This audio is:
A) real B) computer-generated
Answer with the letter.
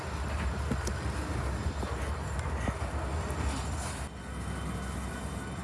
A